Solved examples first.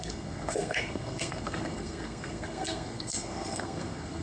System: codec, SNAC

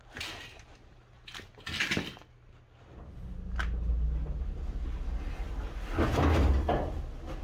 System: none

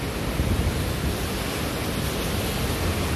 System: none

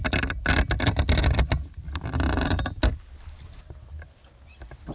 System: none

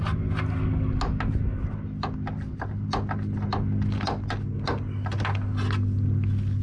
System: none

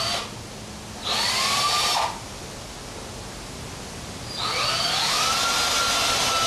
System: none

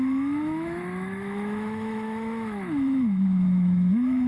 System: autoencoder, DAC-VAE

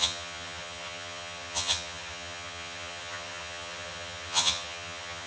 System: vocoder, HiFi-GAN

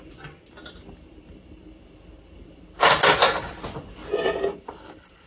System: vocoder, BigVGAN v2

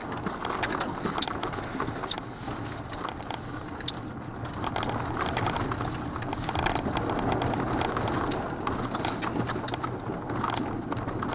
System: none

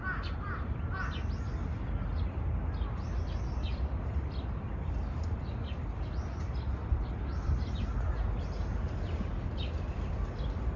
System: none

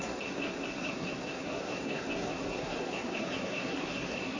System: codec, SNAC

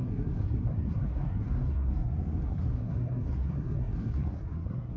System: codec, SNAC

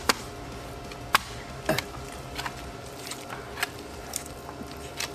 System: none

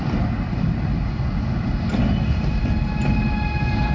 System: none